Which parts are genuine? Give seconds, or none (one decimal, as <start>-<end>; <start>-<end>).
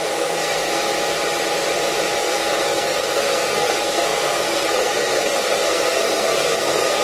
0.9-2.2